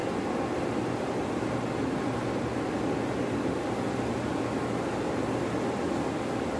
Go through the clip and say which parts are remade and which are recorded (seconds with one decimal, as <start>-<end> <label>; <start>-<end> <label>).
0.0-6.6 recorded